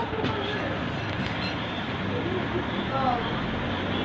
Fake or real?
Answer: real